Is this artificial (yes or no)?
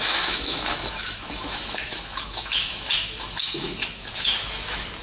yes